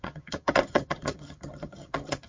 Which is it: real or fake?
fake